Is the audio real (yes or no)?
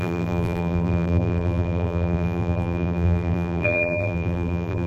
no